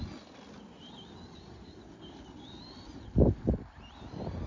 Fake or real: real